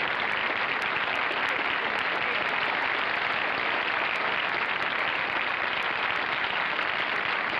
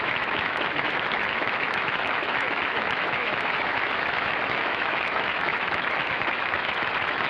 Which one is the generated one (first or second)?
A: second